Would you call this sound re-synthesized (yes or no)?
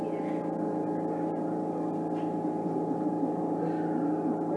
no